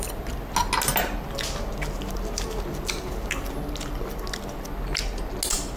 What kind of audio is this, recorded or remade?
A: recorded